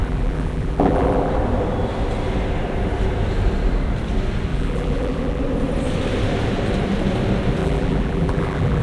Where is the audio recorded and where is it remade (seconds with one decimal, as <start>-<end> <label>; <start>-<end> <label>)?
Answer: 0.0-1.3 remade; 1.3-4.5 recorded; 4.5-5.4 remade; 5.4-7.6 recorded; 7.6-8.8 remade

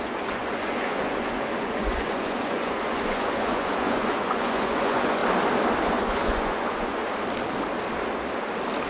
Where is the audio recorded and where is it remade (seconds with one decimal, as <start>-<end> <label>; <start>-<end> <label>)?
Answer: 0.0-5.2 remade; 5.2-5.8 recorded; 5.8-7.0 remade; 7.0-8.9 recorded

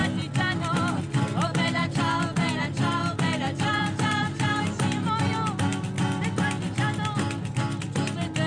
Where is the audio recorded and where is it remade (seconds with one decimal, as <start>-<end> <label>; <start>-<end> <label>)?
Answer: 0.0-8.5 recorded

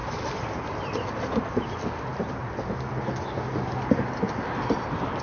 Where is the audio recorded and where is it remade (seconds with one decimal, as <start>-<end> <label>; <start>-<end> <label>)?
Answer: 0.0-5.2 recorded

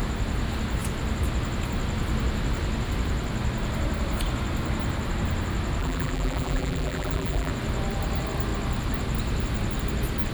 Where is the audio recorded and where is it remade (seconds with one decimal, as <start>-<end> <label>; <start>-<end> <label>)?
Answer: 0.0-5.8 recorded; 5.8-7.5 remade; 7.5-10.3 recorded